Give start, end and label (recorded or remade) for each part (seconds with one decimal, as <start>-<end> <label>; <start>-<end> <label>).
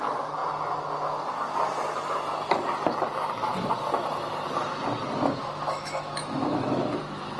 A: 0.0-5.4 recorded; 5.4-7.4 remade